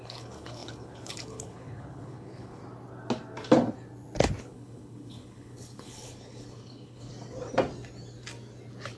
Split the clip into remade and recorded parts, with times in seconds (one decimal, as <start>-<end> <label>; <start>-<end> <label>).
0.0-2.6 remade; 2.6-4.4 recorded; 4.4-7.1 remade; 7.1-9.0 recorded